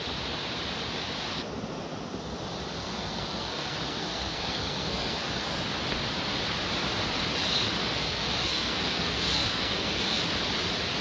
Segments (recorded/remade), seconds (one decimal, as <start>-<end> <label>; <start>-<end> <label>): 0.0-2.8 recorded; 2.8-5.6 remade; 5.6-7.8 recorded; 7.8-10.2 remade; 10.2-11.0 recorded